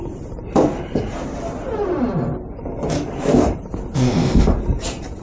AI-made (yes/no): yes